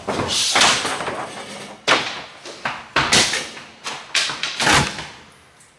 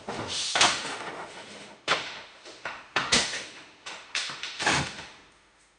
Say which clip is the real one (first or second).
first